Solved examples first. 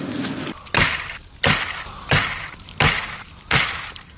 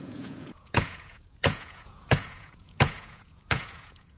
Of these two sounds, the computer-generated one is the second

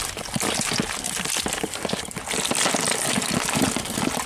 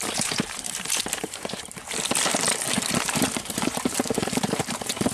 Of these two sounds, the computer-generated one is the second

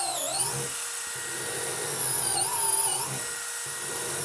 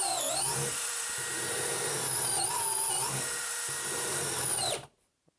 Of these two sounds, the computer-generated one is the second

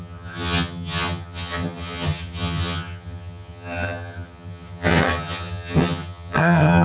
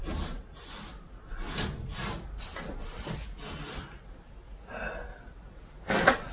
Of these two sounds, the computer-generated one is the first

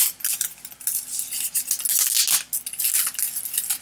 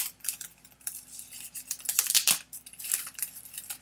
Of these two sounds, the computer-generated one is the second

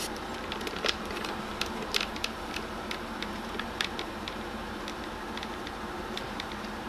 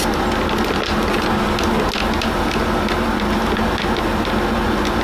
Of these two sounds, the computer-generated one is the first